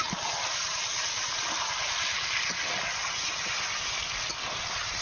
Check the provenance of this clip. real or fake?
real